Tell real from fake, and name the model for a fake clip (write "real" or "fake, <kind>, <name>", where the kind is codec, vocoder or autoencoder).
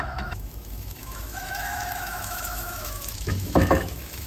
fake, autoencoder, DAC-VAE